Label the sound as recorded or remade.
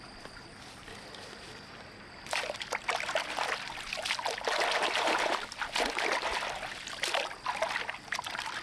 recorded